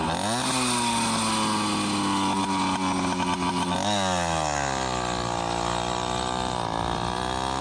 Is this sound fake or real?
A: real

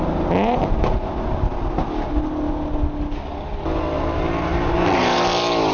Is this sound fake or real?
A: real